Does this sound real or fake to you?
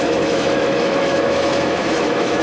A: fake